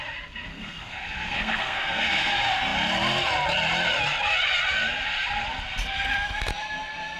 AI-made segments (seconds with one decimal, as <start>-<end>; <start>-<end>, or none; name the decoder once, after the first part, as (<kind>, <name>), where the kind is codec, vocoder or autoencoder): 0.5-2.3 (codec, SNAC)